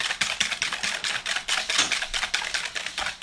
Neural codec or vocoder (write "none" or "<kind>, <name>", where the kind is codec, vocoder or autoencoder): none